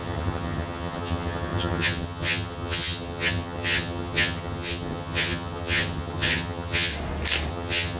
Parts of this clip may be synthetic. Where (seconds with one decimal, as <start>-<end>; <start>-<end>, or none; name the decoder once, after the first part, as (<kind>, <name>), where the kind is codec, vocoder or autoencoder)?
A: 0.0-6.9 (vocoder, HiFi-GAN); 7.5-8.0